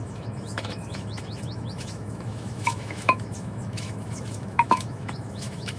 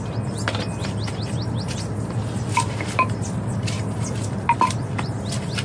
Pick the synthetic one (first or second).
first